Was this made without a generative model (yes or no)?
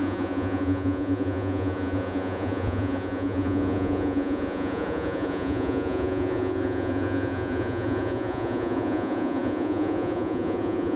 no